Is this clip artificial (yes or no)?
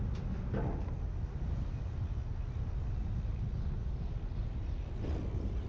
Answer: no